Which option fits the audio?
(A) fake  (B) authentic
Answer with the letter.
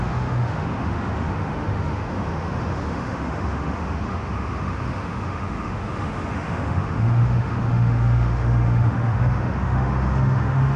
A